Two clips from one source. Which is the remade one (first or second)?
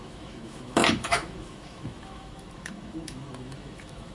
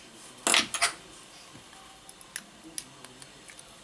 first